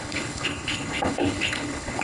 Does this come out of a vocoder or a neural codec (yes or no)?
yes